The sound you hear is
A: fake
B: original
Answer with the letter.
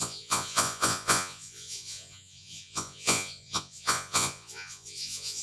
A